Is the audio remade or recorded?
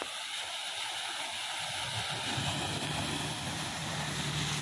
remade